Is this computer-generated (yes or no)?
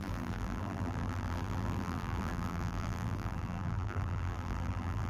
yes